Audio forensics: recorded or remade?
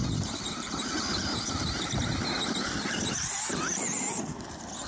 recorded